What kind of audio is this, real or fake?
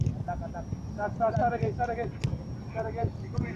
real